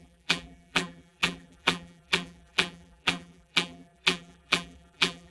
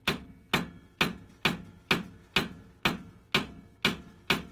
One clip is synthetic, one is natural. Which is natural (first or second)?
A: second